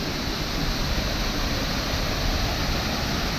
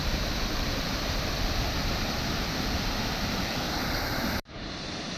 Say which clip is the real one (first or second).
first